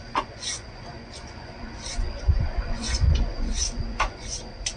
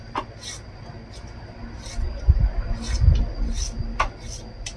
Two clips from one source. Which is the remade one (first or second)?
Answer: first